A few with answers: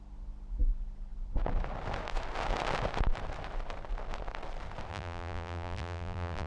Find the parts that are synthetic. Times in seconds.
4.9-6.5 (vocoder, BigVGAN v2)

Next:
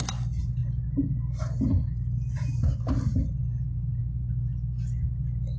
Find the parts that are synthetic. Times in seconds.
none